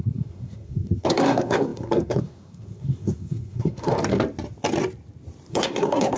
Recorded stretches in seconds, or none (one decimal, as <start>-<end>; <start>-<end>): 3.9-5.5